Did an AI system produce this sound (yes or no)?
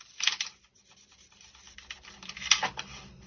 no